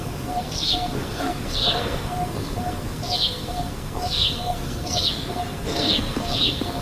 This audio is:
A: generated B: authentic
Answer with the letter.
A